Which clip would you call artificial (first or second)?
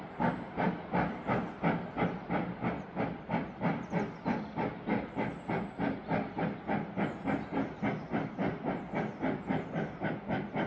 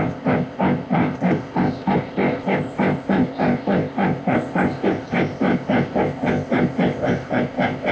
second